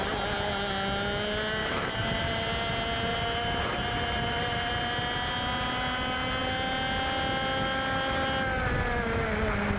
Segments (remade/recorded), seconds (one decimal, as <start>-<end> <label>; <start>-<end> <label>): 0.0-1.6 recorded; 1.6-2.7 remade; 2.7-3.1 recorded; 3.1-4.7 remade; 4.7-9.8 recorded

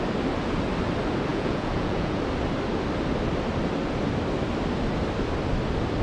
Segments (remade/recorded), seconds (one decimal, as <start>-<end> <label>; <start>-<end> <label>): 0.0-1.3 recorded; 1.3-2.2 remade; 2.2-6.0 recorded

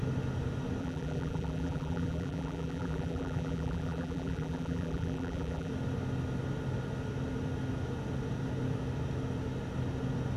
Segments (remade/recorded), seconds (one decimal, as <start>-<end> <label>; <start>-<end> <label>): 0.0-0.8 recorded; 0.8-5.7 remade; 5.7-10.4 recorded

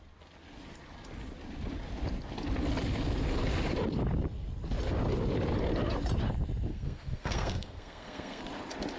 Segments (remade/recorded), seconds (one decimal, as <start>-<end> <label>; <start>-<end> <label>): 0.0-6.7 recorded; 6.7-8.4 remade; 8.4-9.0 recorded

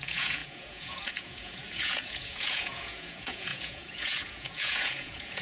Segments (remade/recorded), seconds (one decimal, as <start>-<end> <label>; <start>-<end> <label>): 0.0-5.4 remade